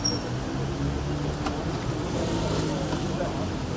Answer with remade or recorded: recorded